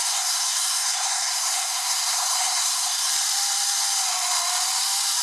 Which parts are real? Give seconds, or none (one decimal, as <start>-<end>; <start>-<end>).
3.1-5.2